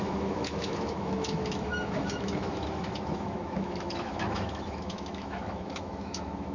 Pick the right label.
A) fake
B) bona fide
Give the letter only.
A